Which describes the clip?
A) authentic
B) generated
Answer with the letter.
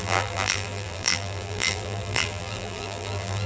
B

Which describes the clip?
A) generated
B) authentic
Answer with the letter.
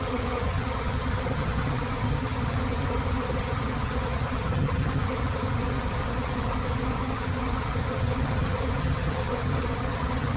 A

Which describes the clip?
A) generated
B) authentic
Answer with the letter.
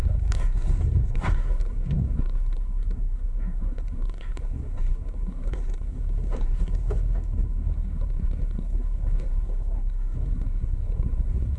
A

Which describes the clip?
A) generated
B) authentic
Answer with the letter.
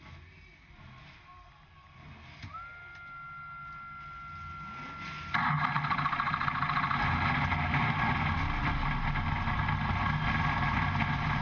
B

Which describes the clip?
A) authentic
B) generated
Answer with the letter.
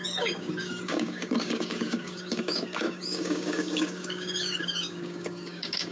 B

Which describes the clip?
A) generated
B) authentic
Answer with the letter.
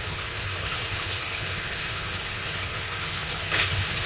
A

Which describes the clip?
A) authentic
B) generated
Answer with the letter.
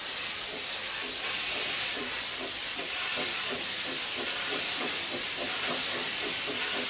B